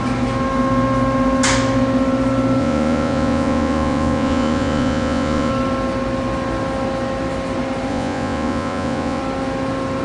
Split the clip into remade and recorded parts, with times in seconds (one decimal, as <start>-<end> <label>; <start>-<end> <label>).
0.0-2.6 recorded; 2.6-5.5 remade; 5.5-7.9 recorded; 7.9-9.2 remade; 9.2-10.0 recorded